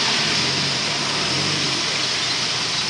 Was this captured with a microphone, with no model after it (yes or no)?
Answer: yes